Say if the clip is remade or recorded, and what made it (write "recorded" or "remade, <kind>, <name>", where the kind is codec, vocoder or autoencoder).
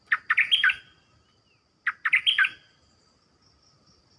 recorded